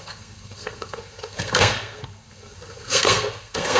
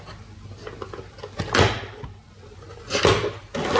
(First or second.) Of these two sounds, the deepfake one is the first